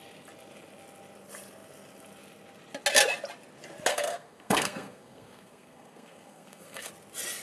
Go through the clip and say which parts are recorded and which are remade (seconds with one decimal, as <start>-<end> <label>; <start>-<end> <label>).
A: 0.0-3.9 recorded; 3.9-6.9 remade; 6.9-7.4 recorded